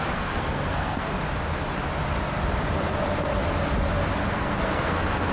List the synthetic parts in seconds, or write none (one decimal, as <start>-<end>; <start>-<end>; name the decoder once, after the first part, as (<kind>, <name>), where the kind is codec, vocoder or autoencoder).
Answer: 0.0-1.1 (codec, SNAC); 4.3-5.3